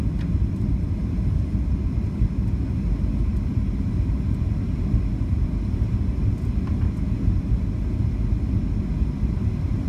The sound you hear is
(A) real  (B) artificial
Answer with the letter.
A